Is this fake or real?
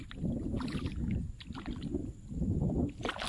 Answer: real